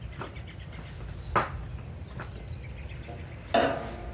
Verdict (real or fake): real